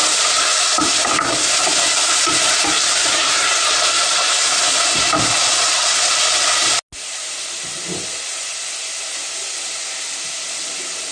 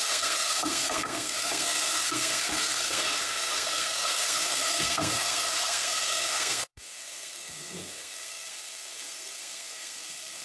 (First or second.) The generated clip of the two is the second